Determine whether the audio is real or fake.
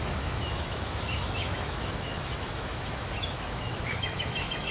fake